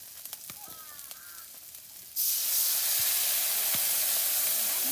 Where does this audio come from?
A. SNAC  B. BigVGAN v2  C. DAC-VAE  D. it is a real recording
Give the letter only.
D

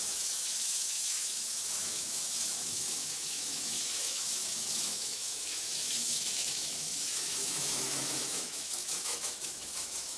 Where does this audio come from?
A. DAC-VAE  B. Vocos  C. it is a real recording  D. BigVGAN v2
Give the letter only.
A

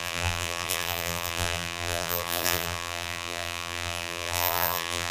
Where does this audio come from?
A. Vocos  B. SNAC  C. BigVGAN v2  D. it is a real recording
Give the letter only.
C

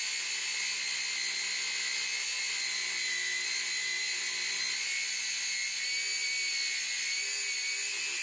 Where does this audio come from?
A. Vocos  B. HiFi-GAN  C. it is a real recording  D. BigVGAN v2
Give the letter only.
C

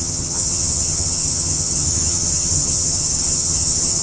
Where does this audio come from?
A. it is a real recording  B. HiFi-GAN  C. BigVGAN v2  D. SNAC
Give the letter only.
B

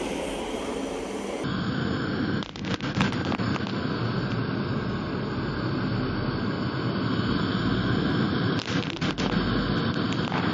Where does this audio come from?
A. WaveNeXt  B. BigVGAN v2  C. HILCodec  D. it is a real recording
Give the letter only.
D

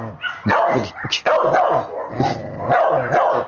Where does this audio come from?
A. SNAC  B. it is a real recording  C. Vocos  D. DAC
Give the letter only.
B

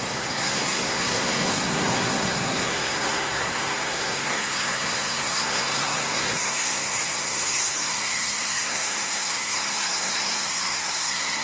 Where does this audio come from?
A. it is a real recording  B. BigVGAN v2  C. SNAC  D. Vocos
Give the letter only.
C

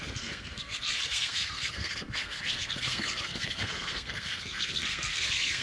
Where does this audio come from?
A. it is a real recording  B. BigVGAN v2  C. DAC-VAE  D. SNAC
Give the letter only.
D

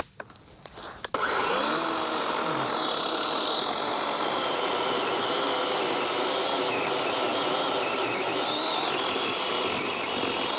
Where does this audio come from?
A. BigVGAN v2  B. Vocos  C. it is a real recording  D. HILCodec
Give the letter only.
C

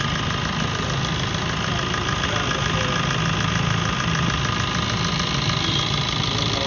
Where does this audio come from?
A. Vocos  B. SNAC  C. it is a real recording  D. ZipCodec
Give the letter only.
C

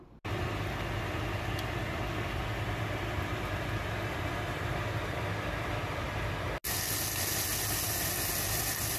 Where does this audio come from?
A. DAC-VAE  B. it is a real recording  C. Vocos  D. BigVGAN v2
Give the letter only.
B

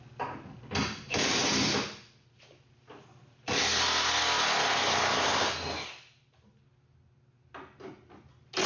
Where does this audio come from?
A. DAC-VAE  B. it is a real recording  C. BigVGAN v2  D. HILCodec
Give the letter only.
B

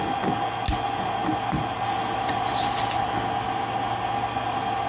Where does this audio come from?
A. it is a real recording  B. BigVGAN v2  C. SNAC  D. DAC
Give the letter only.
A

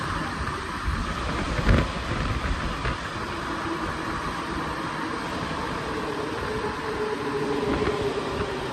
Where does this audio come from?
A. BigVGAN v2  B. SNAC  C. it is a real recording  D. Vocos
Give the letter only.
C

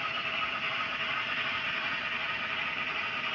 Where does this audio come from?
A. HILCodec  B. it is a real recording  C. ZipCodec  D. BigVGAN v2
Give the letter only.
B